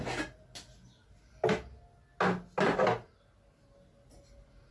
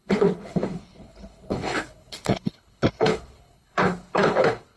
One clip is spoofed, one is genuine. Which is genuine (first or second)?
first